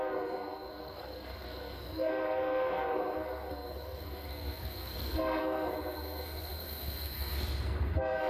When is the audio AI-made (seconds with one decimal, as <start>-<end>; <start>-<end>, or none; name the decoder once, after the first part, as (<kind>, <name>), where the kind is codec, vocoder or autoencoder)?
0.0-8.3 (codec, SNAC)